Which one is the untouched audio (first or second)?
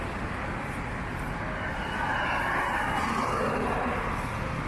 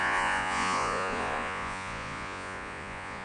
first